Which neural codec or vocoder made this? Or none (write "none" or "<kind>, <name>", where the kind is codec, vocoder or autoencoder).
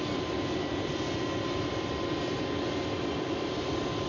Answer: none